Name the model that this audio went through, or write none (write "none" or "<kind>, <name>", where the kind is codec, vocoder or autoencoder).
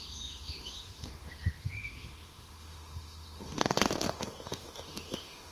autoencoder, DAC-VAE